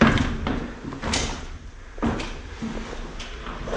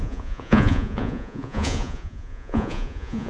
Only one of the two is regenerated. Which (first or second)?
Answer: second